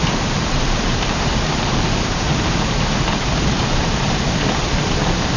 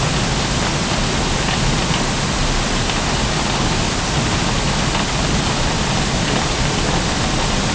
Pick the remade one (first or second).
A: first